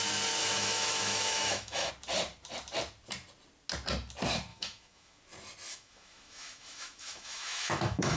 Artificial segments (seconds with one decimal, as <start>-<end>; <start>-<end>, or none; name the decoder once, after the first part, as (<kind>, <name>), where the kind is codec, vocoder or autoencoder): 0.4-1.9 (autoencoder, DAC-VAE); 4.5-5.2; 5.7-8.2

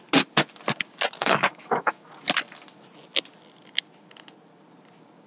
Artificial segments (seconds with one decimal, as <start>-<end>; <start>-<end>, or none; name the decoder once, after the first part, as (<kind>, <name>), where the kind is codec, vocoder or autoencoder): 1.2-2.1 (autoencoder, DAC-VAE)

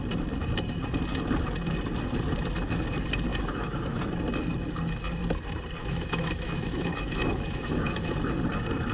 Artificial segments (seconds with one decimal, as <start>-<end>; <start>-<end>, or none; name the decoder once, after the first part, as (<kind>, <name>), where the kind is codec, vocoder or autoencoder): 3.3-4.0 (autoencoder, DAC-VAE); 5.8-8.1

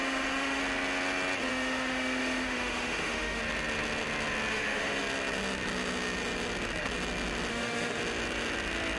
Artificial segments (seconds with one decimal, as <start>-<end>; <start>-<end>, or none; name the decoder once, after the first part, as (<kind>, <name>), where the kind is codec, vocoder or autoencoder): 0.0-0.6 (autoencoder, DAC-VAE); 1.5-3.4; 4.5-5.0; 7.5-8.0